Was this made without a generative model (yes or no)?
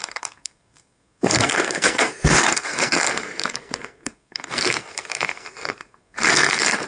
no